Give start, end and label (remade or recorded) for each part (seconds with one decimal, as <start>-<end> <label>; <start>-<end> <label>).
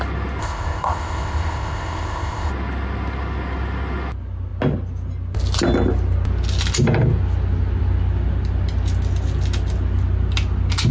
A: 0.0-0.4 recorded; 0.4-2.5 remade; 2.5-10.9 recorded